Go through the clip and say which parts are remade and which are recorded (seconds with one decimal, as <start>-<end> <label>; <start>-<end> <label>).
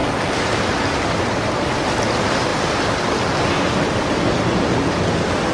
0.0-5.5 recorded